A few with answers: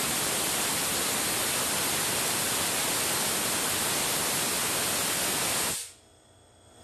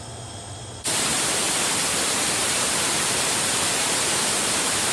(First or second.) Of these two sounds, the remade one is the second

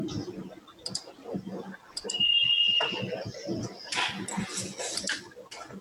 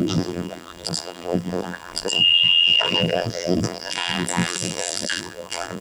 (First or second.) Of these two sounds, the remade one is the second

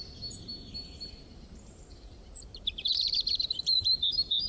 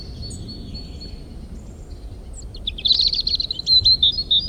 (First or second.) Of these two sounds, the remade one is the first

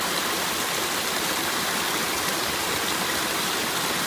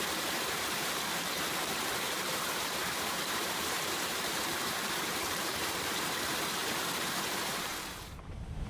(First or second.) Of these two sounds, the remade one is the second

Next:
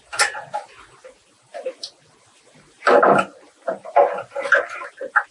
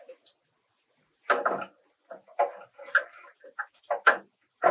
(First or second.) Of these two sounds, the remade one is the first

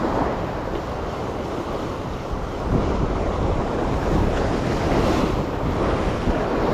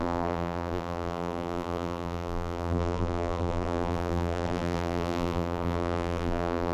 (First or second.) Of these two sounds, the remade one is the second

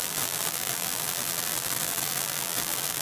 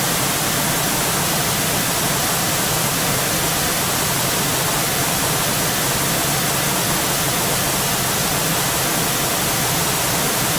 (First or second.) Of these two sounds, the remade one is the first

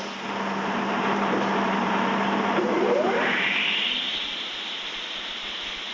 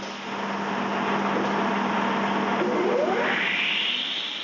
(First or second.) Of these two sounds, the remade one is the first